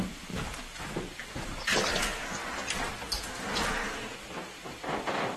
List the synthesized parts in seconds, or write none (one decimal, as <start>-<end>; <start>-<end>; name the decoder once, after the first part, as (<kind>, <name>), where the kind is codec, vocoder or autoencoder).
none